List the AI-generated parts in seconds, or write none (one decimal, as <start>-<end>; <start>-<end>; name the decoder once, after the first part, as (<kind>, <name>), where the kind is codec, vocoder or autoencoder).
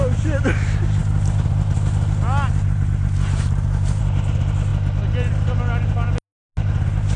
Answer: none